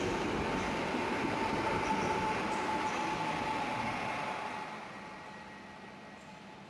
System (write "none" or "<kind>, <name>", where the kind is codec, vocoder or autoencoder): none